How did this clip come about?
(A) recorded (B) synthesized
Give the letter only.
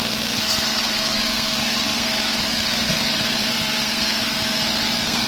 B